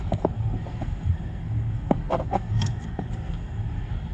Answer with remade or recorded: remade